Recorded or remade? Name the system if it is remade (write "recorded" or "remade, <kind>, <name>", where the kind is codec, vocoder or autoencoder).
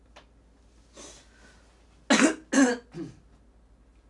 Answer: recorded